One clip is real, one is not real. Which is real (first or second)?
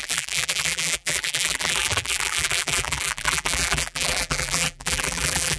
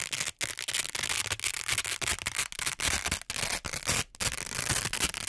second